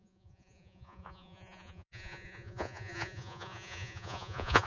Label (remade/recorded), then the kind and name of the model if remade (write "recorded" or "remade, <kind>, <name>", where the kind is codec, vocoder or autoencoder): remade, vocoder, Vocos